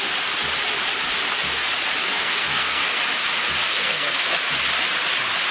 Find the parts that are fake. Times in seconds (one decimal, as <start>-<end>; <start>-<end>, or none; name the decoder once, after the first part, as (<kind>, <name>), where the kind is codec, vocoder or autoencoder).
2.0-3.0 (codec, SNAC); 3.6-4.2